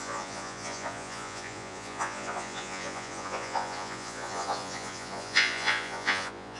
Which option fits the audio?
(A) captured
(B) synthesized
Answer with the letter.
B